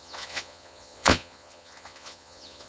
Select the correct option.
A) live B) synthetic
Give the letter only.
B